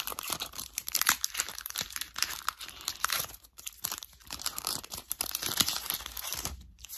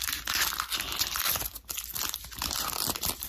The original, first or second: second